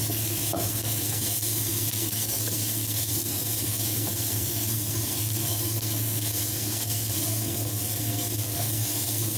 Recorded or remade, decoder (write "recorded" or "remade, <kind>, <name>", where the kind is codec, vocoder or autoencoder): remade, codec, SNAC